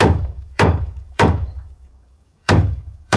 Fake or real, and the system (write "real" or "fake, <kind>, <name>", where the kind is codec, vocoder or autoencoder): fake, codec, DAC